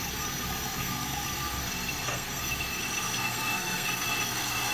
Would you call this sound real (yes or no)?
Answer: no